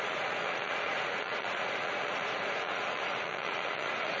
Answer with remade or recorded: remade